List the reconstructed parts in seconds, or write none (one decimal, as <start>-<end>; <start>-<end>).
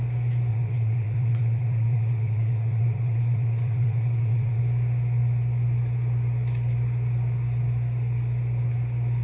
0.5-4.6